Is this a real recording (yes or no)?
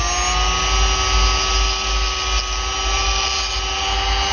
yes